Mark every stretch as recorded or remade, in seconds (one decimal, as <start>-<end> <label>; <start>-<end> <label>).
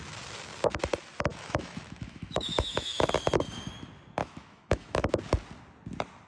0.0-1.3 recorded; 1.3-3.1 remade; 3.1-4.2 recorded; 4.2-5.1 remade; 5.1-6.3 recorded